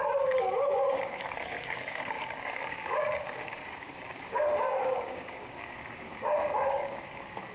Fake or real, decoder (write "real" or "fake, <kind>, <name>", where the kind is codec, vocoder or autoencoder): fake, codec, DAC